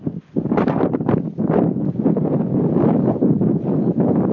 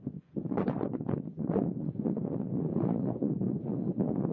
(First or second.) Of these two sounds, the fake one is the second